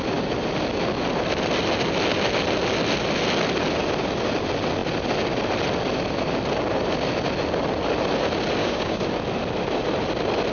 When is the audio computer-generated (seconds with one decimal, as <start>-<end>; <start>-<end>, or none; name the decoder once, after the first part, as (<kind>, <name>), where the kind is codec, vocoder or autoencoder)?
8.6-9.1 (codec, DAC)